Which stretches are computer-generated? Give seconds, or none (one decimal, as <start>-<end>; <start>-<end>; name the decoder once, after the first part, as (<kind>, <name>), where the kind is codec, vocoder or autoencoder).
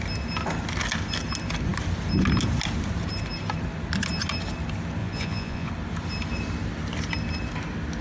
5.0-5.7 (vocoder, Vocos)